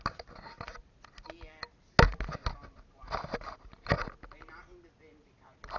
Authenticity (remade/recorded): recorded